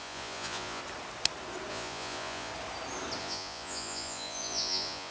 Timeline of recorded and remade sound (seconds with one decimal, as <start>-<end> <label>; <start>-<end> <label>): 0.0-0.8 remade; 0.8-1.7 recorded; 1.7-2.5 remade; 2.5-3.2 recorded; 3.2-5.1 remade